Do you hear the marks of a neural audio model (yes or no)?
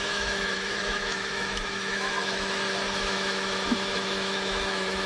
yes